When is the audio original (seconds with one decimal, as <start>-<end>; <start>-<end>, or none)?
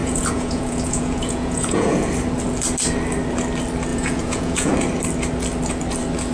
2.1-3.9; 4.7-6.3